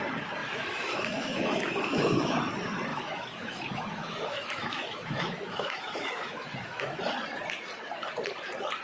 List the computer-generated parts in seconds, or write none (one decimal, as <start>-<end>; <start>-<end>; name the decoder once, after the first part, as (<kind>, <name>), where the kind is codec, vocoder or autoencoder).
0.4-2.4 (autoencoder, DAC-VAE); 2.9-7.0